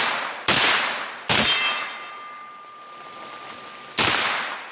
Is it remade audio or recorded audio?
recorded